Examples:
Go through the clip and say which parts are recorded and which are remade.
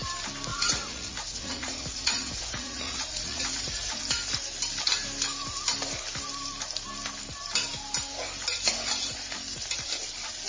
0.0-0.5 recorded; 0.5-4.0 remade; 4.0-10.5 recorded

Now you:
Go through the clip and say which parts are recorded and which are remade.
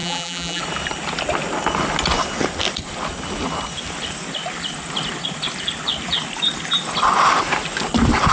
0.0-0.6 remade; 0.6-8.3 recorded